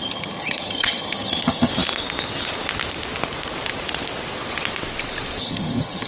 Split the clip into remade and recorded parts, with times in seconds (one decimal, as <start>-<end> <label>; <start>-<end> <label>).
0.0-1.7 remade; 1.7-5.4 recorded; 5.4-6.1 remade